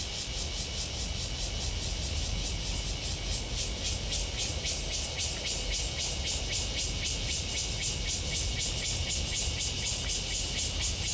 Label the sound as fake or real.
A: real